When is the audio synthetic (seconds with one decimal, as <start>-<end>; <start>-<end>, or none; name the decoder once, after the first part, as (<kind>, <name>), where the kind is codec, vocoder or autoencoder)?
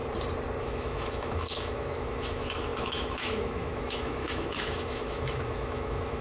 0.6-6.2 (autoencoder, DAC-VAE)